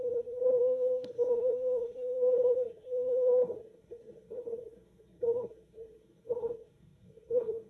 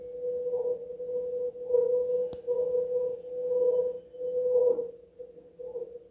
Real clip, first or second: second